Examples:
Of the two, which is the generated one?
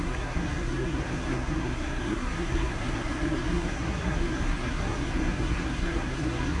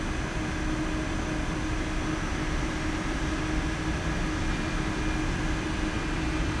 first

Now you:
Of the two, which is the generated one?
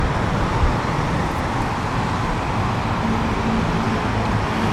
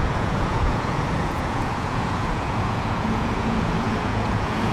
second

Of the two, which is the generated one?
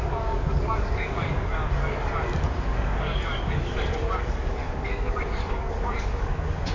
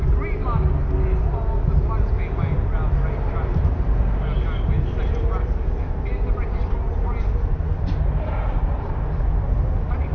first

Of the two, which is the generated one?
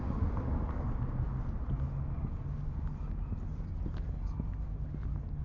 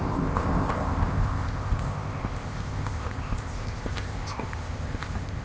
second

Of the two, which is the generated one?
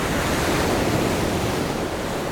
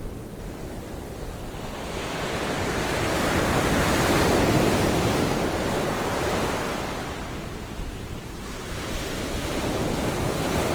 second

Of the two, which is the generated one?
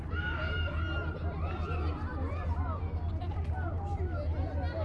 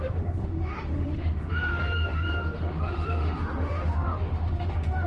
second